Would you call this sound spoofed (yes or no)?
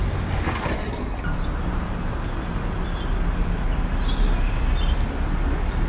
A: no